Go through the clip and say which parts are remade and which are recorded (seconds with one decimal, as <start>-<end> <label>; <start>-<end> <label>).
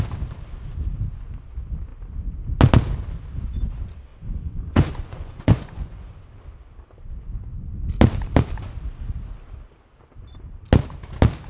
0.0-4.1 recorded; 4.1-6.2 remade; 6.2-11.5 recorded